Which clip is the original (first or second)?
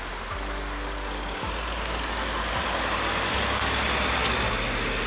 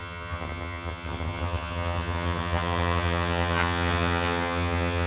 first